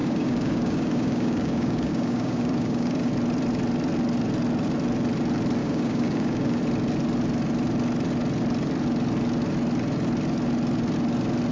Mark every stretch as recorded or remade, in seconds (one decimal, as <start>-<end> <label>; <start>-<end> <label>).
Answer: 0.0-3.1 remade; 3.1-5.6 recorded; 5.6-6.6 remade; 6.6-11.5 recorded